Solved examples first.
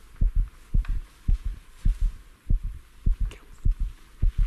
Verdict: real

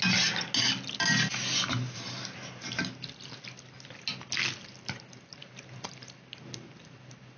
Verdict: real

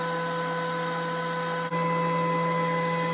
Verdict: real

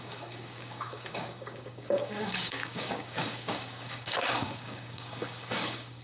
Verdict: fake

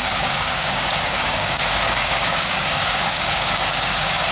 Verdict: fake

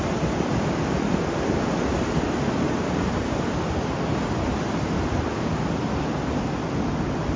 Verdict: real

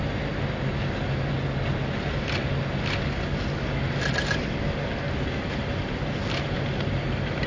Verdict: real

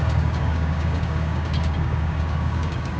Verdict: fake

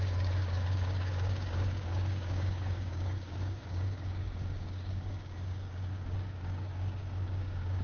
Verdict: fake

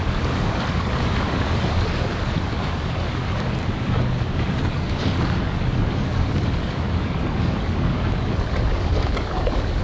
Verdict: fake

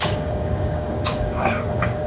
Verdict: fake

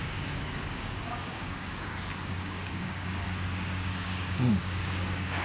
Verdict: fake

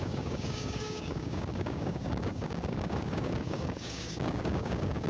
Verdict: fake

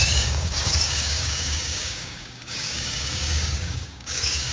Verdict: fake